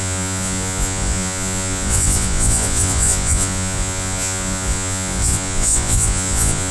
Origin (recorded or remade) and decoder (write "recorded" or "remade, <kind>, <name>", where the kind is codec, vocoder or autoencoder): remade, vocoder, Vocos